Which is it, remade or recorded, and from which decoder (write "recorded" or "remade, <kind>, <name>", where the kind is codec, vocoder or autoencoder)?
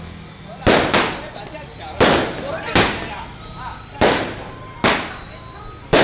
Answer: recorded